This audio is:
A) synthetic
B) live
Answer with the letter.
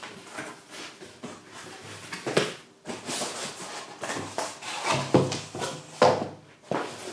B